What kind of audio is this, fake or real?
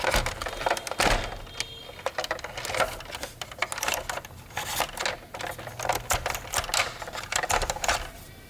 real